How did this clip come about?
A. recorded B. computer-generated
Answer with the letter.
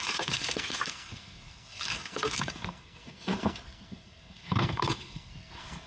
B